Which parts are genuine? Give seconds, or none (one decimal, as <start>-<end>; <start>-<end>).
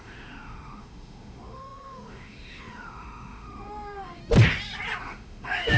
4.2-5.0